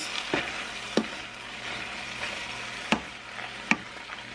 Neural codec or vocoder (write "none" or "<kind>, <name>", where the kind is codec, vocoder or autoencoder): none